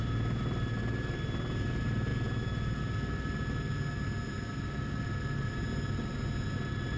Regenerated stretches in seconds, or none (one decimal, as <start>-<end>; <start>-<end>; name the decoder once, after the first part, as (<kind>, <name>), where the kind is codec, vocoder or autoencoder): none